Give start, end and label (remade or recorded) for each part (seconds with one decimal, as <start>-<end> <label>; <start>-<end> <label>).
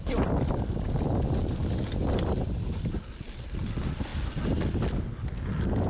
0.0-5.9 recorded